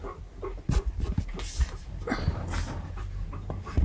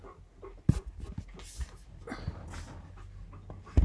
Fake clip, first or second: first